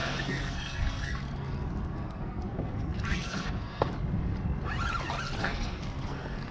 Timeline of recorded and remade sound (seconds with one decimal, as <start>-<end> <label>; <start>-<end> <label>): 0.0-3.9 remade; 3.9-5.4 recorded; 5.4-6.5 remade